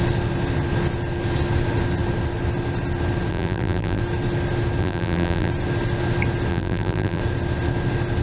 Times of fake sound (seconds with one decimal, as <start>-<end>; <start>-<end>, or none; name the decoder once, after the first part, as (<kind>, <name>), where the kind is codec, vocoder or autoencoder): 3.3-4.0 (vocoder, BigVGAN v2); 4.8-5.5; 6.5-7.2